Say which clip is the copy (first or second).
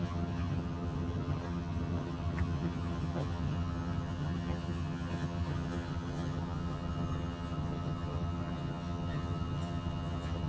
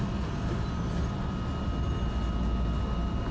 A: first